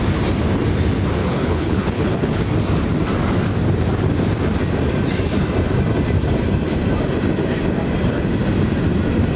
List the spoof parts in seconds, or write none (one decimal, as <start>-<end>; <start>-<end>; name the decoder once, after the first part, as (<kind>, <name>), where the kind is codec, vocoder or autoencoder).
1.2-2.4 (codec, HILCodec)